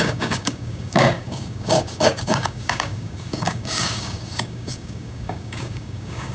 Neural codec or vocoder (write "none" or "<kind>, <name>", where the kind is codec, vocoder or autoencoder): codec, DAC